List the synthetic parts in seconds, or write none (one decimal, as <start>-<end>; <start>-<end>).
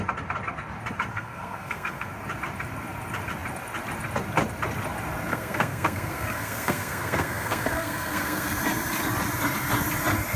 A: 1.1-2.1; 5.3-8.6